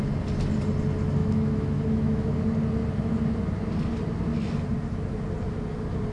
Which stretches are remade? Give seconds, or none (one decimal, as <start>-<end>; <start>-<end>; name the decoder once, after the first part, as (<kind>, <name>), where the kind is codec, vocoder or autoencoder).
1.2-2.4 (autoencoder, DAC-VAE)